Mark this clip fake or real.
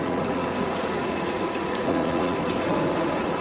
fake